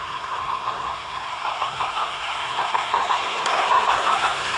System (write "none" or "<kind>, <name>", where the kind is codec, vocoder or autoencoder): codec, SNAC